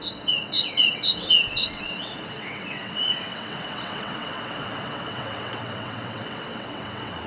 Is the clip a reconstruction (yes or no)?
yes